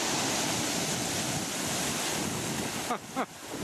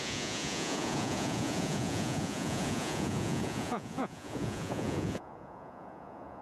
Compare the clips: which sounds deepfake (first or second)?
second